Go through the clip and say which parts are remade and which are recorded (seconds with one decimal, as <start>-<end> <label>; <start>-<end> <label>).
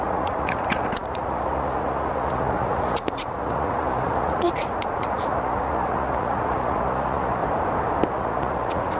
0.0-7.4 remade; 7.4-8.1 recorded; 8.1-9.0 remade